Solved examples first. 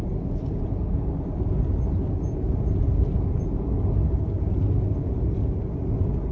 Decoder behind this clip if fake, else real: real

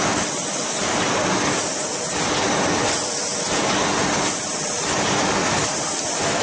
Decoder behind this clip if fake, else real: real